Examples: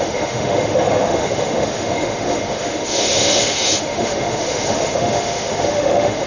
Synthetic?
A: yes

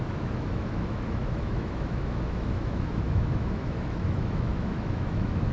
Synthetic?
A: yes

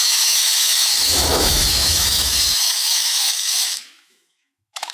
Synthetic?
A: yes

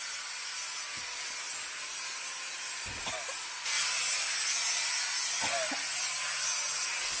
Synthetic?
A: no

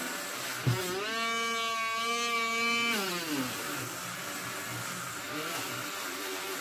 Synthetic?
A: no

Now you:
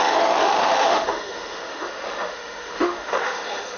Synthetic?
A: yes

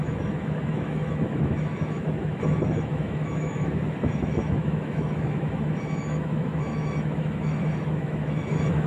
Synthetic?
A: yes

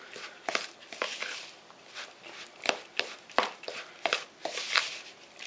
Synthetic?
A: no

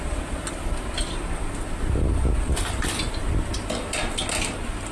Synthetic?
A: no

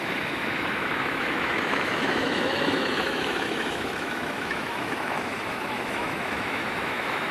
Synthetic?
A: yes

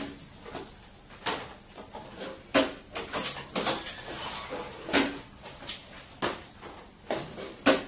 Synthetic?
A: no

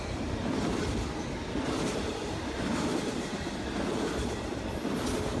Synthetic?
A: no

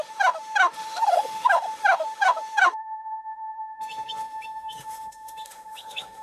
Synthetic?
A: yes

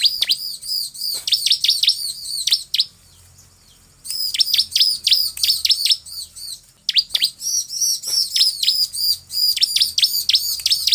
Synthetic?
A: no